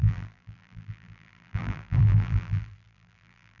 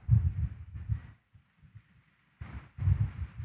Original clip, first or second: second